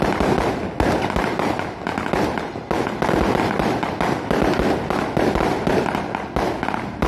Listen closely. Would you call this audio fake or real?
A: real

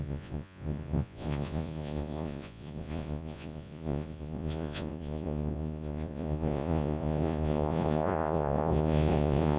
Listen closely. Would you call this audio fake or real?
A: fake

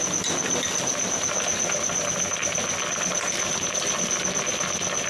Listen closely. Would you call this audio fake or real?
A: real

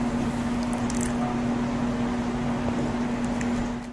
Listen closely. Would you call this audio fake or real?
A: real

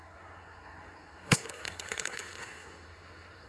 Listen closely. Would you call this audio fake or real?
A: fake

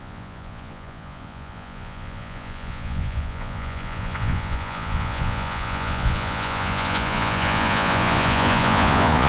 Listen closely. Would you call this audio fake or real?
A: fake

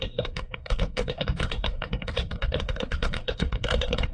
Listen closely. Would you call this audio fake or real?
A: fake